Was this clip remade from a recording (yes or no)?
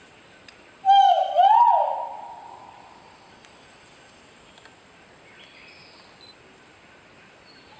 no